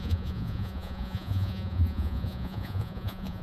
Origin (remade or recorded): remade